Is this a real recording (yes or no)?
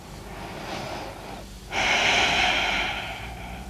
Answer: yes